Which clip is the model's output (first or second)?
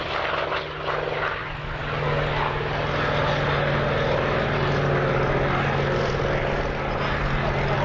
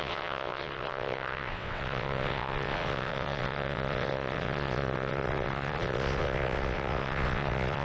second